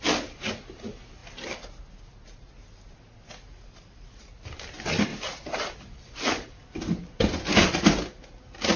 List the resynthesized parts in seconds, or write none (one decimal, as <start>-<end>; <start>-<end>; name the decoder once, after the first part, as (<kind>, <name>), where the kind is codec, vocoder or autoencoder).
1.2-1.8 (vocoder, BigVGAN v2); 5.1-7.2